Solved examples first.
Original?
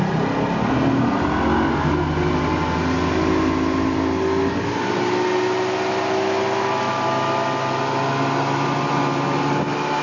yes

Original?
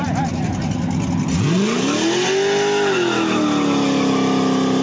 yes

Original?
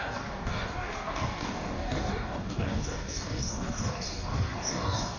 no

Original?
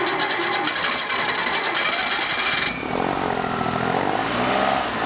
yes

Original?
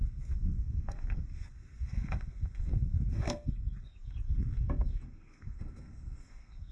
no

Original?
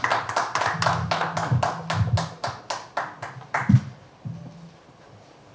yes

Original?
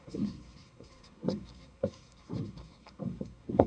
no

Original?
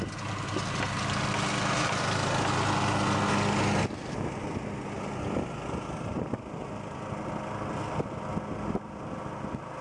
yes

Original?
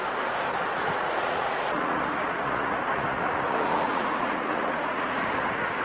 no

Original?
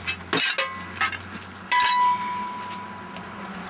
yes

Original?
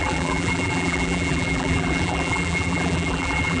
no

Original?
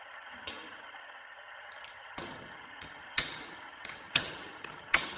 no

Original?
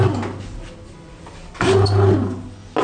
yes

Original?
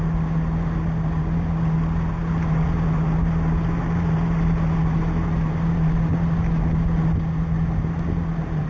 yes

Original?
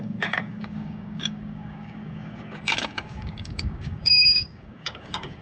no